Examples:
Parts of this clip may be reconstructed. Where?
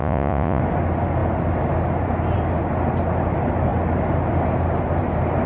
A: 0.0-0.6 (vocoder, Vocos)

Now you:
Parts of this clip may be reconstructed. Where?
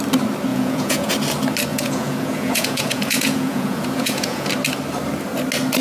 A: 0.5-1.1 (vocoder, Vocos); 1.7-4.5